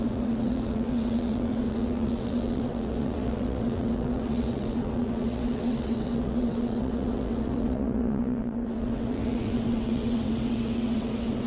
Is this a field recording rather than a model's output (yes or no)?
no